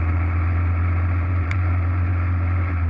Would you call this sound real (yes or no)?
no